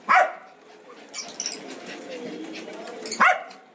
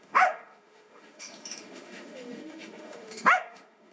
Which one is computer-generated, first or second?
second